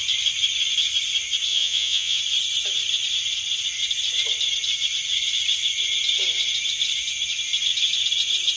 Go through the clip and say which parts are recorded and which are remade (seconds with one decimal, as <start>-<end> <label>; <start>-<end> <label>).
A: 0.0-1.5 recorded; 1.5-2.2 remade; 2.2-8.6 recorded